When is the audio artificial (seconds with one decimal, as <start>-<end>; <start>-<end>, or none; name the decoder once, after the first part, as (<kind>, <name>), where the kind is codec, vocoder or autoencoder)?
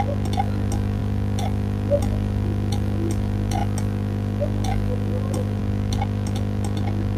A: none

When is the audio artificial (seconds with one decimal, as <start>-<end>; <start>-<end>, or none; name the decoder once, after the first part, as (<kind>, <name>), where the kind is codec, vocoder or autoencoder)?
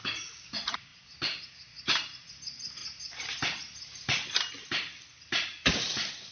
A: none